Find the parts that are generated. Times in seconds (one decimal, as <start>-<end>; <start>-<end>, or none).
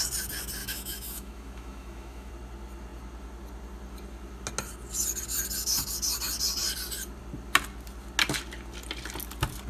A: 0.6-2.3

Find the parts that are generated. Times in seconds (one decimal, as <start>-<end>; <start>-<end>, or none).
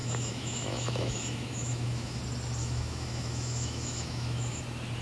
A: 0.0-2.2; 2.6-4.6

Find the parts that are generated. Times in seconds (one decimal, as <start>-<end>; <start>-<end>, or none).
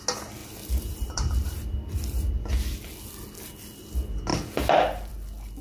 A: 0.4-2.3; 4.3-5.1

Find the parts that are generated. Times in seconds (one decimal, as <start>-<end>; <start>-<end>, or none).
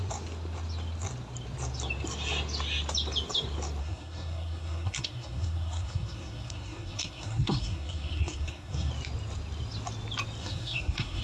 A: 3.8-8.9; 10.4-11.2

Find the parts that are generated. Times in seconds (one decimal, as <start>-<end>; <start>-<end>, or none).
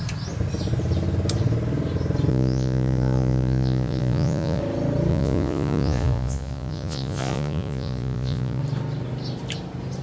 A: 2.3-4.6; 5.1-8.6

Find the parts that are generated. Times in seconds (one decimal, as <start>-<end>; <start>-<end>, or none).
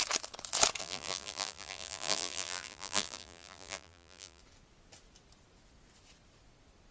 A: 0.8-4.4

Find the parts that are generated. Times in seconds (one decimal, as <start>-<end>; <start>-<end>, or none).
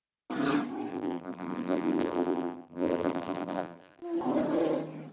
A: 0.9-4.0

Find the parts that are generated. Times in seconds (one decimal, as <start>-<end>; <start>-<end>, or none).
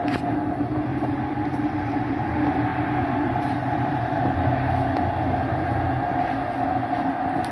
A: 0.9-2.3; 2.7-4.5